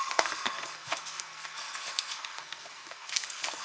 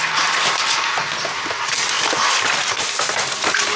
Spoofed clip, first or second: first